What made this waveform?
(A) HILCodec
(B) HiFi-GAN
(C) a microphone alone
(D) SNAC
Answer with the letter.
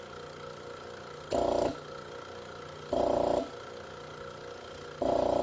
C